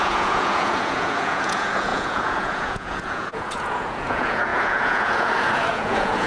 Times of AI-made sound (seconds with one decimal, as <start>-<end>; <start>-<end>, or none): 0.0-6.3